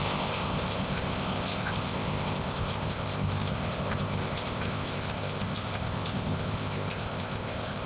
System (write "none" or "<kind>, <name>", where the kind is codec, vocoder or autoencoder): codec, ZipCodec